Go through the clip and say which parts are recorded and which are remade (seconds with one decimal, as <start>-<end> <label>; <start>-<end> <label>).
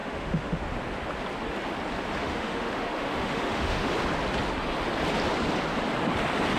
0.0-0.6 remade; 0.6-2.2 recorded; 2.2-3.9 remade; 3.9-6.6 recorded